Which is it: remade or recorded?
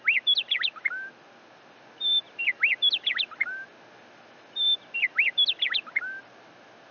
recorded